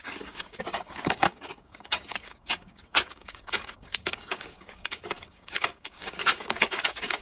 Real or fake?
fake